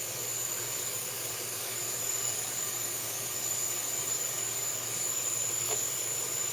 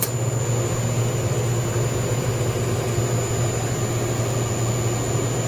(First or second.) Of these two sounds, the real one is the second